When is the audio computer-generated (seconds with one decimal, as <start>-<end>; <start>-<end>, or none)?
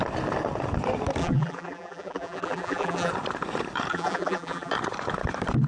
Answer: 1.2-3.1; 3.9-4.7